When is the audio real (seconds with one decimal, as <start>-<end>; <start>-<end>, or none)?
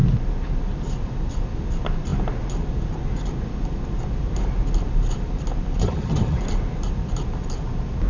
0.0-5.8; 6.4-8.1